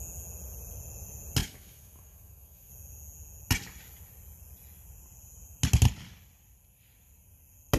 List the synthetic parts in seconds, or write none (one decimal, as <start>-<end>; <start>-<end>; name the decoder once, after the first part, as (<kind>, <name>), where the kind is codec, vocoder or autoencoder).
1.4-2.7 (autoencoder, DAC-VAE)